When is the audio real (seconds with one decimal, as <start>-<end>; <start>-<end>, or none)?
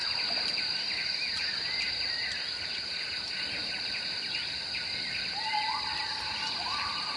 0.0-7.2